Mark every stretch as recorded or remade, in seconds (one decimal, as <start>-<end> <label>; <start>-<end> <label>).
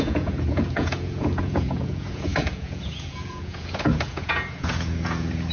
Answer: 0.0-5.5 remade